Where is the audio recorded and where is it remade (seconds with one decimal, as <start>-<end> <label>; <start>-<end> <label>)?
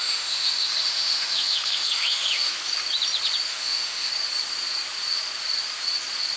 0.0-2.5 remade; 2.5-3.5 recorded; 3.5-4.1 remade; 4.1-6.4 recorded